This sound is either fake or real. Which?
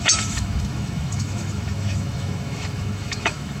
fake